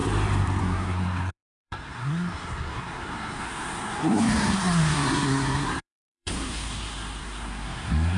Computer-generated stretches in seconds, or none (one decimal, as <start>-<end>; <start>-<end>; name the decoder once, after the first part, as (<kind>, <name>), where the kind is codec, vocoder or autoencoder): 0.6-8.2 (codec, SNAC)